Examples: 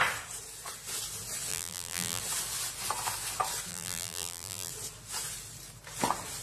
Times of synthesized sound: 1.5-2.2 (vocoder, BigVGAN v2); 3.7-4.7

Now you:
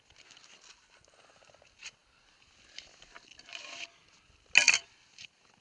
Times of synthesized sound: none

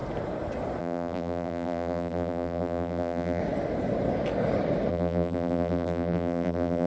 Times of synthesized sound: 0.8-3.4 (vocoder, BigVGAN v2); 4.9-6.9

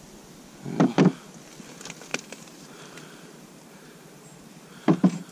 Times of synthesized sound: 2.1-5.3 (vocoder, BigVGAN v2)

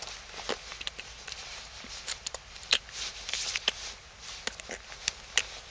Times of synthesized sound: 0.7-3.6 (vocoder, BigVGAN v2)